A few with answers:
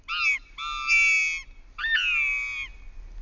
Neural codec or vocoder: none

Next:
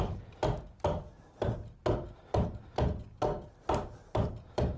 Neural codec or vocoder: none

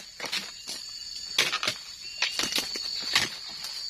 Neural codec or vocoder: none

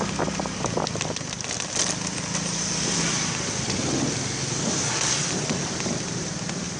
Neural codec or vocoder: none